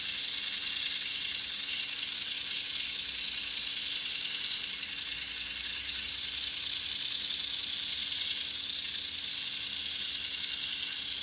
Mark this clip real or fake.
real